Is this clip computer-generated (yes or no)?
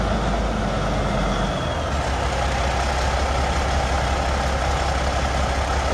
no